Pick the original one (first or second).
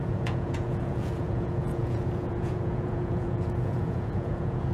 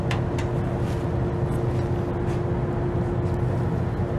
second